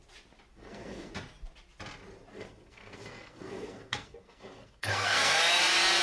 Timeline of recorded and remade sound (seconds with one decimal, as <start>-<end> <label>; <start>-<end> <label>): 0.0-0.5 recorded; 0.5-1.1 remade; 1.1-2.3 recorded; 2.3-5.4 remade; 5.4-6.0 recorded